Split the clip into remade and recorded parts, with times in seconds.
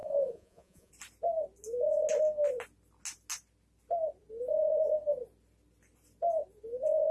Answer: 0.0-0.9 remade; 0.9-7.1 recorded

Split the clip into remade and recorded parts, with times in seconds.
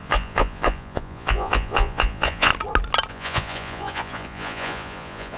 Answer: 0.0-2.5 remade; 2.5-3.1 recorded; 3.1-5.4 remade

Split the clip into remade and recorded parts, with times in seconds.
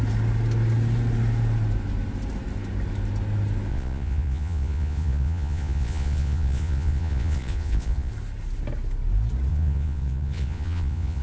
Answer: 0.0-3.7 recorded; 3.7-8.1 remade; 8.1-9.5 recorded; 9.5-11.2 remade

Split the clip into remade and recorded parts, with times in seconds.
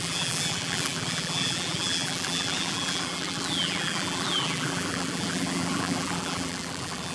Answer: 0.0-7.1 remade